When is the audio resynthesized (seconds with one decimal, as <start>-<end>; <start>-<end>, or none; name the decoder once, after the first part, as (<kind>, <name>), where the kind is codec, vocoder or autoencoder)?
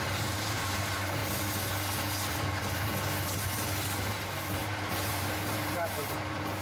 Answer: 0.0-1.2 (vocoder, BigVGAN v2); 2.3-2.9; 4.6-6.6